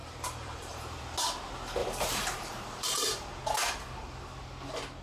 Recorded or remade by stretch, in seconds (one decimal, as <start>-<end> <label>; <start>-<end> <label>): 0.0-1.0 remade; 1.0-1.8 recorded; 1.8-3.4 remade; 3.4-5.0 recorded